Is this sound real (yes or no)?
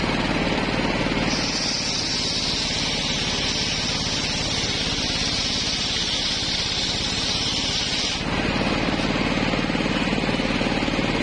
yes